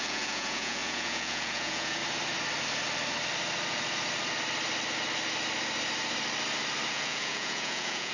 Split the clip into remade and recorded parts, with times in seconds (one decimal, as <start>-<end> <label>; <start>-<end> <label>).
0.0-2.0 remade; 2.0-6.9 recorded; 6.9-8.1 remade